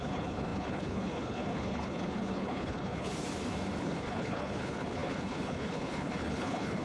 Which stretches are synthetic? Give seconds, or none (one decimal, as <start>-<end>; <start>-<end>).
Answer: 0.0-3.1; 3.8-6.8